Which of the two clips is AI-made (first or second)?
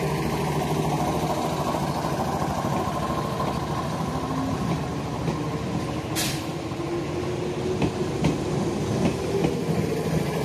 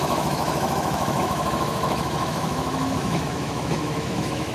second